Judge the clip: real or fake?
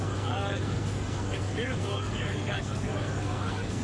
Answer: fake